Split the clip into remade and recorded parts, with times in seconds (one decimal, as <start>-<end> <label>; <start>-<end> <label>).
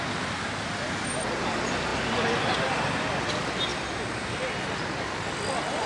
0.0-5.9 recorded